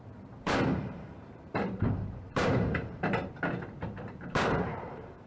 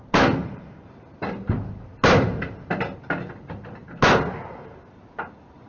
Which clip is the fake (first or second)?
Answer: first